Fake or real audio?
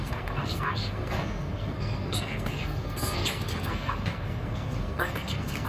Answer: fake